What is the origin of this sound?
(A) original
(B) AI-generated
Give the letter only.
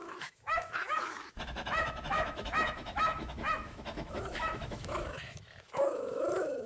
B